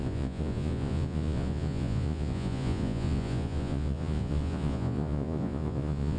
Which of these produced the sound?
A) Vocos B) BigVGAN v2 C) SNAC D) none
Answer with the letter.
A